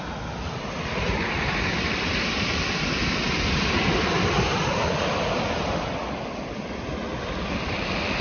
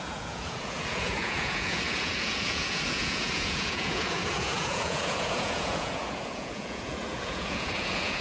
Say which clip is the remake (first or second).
second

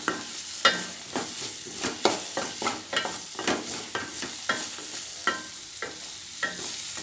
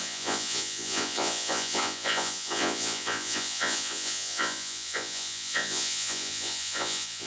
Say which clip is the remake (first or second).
second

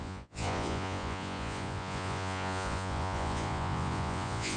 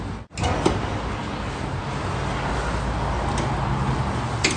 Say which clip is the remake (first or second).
first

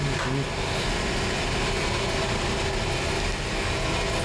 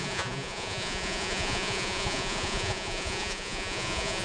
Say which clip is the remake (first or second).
second